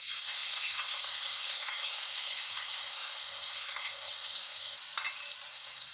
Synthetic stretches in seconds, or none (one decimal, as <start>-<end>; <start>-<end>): 0.0-4.8; 5.5-5.9